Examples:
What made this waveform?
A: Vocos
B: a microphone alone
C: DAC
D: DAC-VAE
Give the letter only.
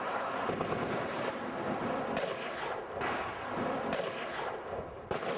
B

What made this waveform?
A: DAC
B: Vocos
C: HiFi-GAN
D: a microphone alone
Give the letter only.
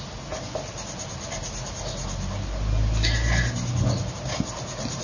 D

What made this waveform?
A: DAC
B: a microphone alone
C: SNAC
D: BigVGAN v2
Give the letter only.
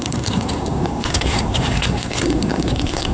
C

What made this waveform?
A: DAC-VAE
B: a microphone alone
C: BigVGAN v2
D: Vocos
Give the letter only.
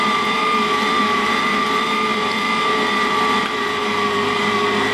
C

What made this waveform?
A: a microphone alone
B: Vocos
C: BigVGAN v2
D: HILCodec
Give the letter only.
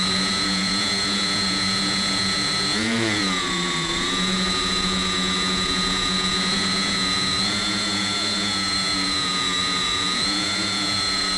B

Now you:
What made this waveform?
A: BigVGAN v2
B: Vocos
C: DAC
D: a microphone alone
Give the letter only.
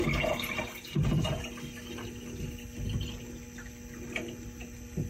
D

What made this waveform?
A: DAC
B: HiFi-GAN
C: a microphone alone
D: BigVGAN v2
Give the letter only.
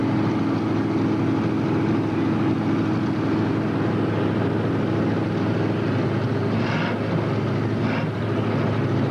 C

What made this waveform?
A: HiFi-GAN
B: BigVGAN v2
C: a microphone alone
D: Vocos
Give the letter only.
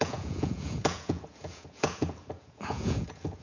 D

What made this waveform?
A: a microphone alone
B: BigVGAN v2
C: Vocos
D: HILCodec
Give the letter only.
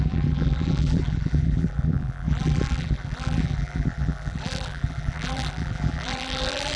B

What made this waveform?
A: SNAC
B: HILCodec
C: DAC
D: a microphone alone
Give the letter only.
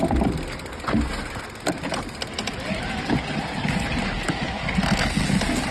D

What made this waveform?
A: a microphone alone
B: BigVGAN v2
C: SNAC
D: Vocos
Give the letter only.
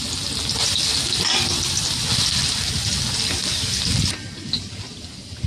A